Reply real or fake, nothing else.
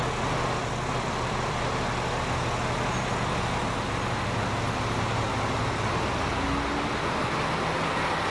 real